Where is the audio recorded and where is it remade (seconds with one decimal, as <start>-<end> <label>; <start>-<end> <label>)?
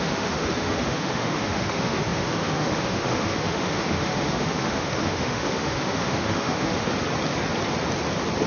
0.0-6.9 remade; 6.9-8.5 recorded